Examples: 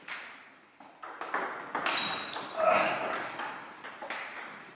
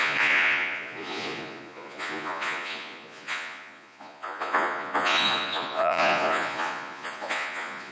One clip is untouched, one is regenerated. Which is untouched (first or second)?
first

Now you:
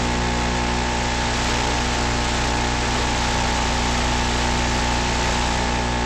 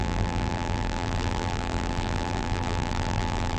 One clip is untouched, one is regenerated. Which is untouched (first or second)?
first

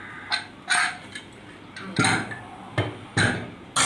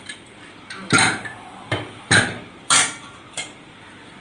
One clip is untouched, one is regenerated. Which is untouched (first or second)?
first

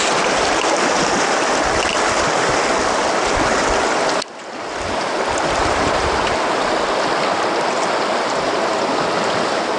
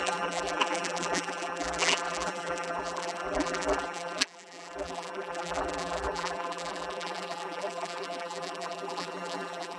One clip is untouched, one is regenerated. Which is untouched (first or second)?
first